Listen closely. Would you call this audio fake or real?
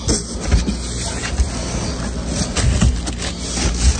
real